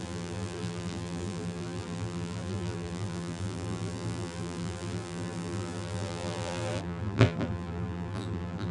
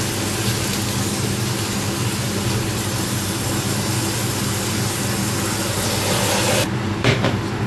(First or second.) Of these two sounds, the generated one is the first